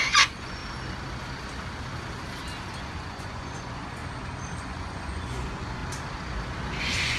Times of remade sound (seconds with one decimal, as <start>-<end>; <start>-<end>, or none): 0.0-0.6; 2.8-4.0; 4.6-5.8; 6.8-7.2